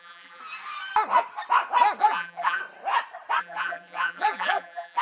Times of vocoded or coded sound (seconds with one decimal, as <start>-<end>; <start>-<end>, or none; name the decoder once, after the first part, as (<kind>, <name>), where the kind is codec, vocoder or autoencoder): 0.0-0.4 (vocoder, BigVGAN v2); 2.0-2.6; 3.4-5.0